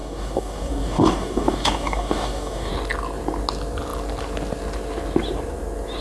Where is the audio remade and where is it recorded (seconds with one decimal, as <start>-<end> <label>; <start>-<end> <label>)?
0.0-2.7 remade; 2.7-6.0 recorded